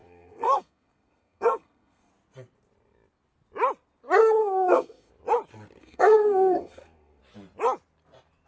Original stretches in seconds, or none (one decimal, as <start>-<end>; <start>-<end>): 2.1-4.4; 5.1-5.8; 7.2-8.5